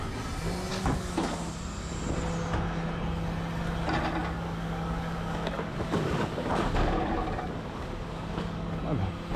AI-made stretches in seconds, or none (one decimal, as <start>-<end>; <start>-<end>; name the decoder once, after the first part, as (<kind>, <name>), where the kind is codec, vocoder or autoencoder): 0.7-1.6 (codec, DAC); 4.2-8.8